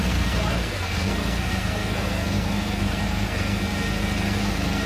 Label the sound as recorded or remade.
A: remade